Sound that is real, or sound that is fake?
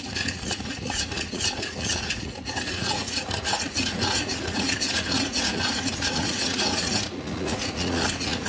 fake